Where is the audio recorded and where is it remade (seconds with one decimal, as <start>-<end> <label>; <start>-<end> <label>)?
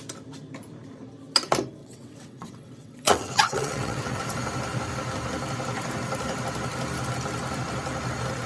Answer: 0.0-1.8 recorded; 1.8-4.2 remade; 4.2-8.5 recorded